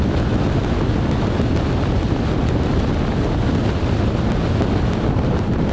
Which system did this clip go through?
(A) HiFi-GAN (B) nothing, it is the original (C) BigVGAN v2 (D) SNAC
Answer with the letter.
B